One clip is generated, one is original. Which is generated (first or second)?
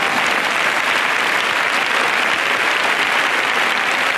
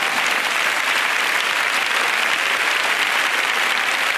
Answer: second